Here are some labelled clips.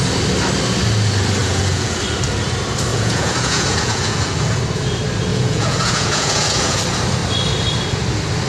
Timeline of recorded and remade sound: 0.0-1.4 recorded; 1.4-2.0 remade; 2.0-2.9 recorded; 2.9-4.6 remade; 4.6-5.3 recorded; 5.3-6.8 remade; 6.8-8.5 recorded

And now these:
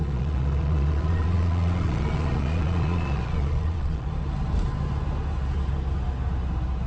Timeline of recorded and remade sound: 0.0-4.1 remade; 4.1-6.9 recorded

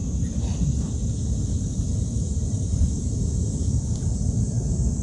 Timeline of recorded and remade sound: 0.0-5.0 recorded